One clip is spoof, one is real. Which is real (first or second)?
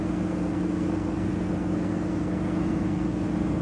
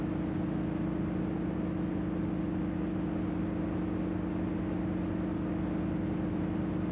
second